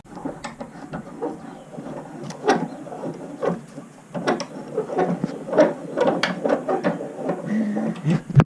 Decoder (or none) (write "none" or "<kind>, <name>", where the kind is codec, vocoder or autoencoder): none